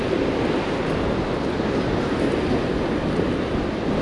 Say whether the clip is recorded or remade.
recorded